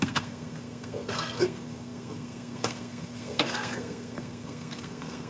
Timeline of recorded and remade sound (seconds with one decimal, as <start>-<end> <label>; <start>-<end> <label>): 0.0-5.3 remade